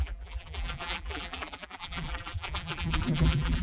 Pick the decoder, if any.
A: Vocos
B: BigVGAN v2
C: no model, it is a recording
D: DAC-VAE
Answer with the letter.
B